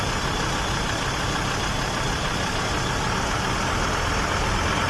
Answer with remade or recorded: recorded